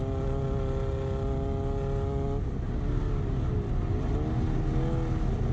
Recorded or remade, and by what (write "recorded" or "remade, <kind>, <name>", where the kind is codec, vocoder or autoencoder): recorded